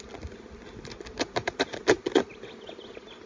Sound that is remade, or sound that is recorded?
recorded